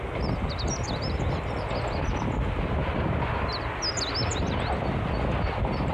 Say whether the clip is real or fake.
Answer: real